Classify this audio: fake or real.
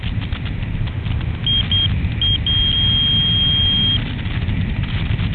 real